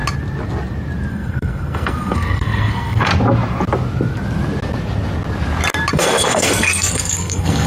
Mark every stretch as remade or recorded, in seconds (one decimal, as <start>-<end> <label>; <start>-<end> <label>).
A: 0.0-1.1 recorded; 1.1-3.1 remade; 3.1-5.9 recorded; 5.9-7.7 remade